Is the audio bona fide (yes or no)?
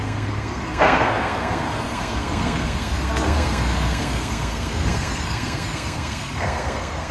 no